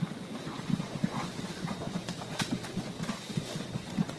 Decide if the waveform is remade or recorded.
remade